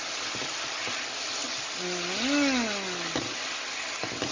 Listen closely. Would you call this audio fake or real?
real